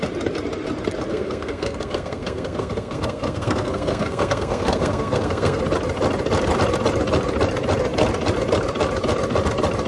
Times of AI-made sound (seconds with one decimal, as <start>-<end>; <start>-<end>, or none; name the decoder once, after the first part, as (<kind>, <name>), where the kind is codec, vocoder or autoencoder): 1.1-5.6 (codec, SNAC)